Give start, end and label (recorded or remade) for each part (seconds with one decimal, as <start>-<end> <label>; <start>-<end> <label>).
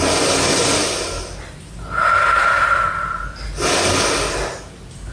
0.0-5.1 recorded